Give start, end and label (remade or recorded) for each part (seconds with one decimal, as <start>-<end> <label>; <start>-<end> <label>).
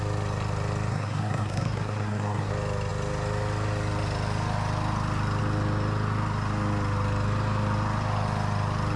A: 0.0-0.9 recorded; 0.9-2.5 remade; 2.5-9.0 recorded